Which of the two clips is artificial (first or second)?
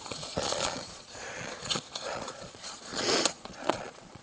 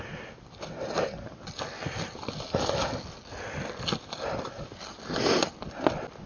first